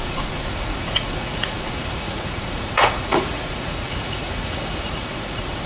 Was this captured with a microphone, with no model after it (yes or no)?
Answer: no